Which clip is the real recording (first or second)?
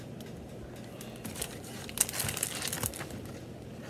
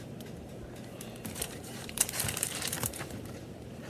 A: first